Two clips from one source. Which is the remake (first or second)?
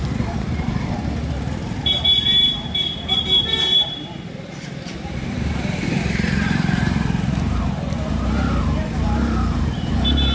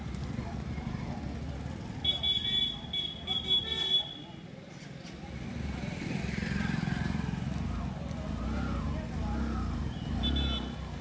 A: first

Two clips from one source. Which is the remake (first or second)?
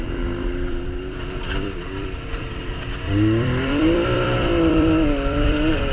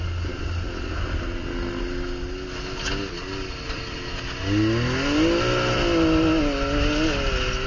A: first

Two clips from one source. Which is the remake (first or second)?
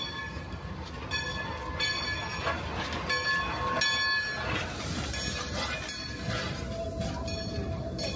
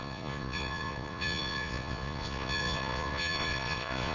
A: second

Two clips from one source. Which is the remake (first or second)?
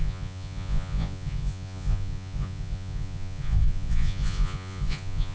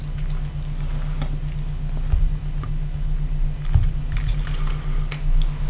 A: first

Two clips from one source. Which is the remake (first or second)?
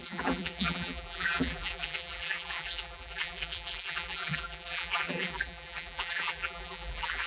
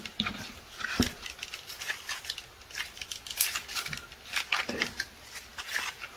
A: first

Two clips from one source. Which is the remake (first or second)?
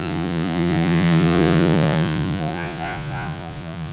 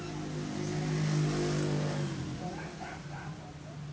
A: first